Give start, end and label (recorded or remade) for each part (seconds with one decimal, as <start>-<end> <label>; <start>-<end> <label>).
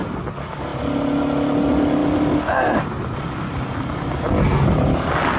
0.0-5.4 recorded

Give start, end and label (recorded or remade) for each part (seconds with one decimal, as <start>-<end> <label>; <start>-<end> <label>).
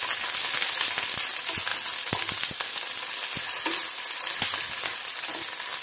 0.0-5.8 recorded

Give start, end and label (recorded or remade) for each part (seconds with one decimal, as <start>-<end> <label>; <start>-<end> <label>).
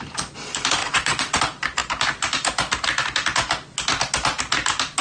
0.0-0.8 recorded; 0.8-1.4 remade; 1.4-5.0 recorded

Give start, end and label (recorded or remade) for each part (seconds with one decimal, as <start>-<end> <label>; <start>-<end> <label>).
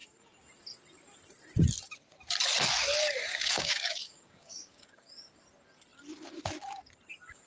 0.0-3.3 recorded; 3.3-5.1 remade; 5.1-7.5 recorded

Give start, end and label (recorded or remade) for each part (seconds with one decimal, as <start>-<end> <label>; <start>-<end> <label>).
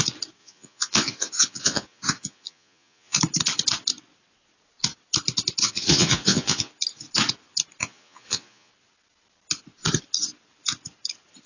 0.0-0.4 recorded; 0.4-3.2 remade; 3.2-5.6 recorded; 5.6-6.7 remade; 6.7-7.8 recorded; 7.8-8.7 remade; 8.7-11.5 recorded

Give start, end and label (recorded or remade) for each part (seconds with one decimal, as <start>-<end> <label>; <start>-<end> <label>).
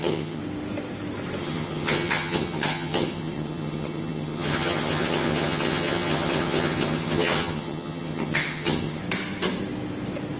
0.0-0.4 remade; 0.4-1.4 recorded; 1.4-9.0 remade; 9.0-10.4 recorded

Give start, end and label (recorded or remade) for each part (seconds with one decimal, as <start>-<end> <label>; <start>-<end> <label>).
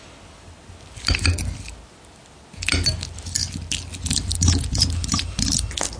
0.0-6.0 recorded